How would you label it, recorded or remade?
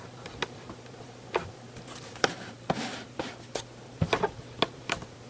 remade